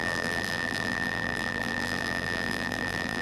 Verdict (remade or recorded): remade